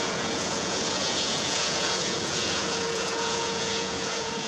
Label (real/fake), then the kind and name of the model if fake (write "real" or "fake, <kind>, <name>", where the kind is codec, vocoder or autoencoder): fake, vocoder, Vocos